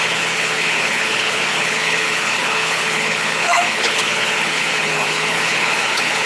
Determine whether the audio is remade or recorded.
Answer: remade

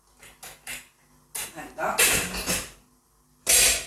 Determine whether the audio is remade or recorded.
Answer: recorded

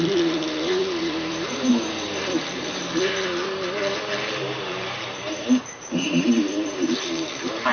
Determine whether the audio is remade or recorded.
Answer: remade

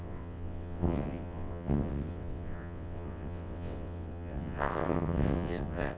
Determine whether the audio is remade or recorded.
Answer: remade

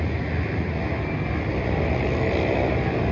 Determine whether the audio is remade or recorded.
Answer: recorded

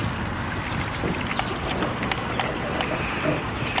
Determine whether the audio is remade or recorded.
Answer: recorded